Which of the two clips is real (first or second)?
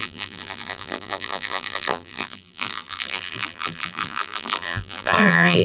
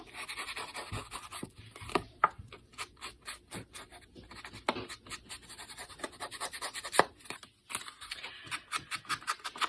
second